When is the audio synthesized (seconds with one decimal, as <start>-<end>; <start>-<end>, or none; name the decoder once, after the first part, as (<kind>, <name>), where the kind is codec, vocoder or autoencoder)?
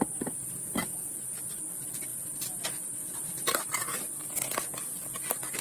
0.9-1.7 (vocoder, Vocos)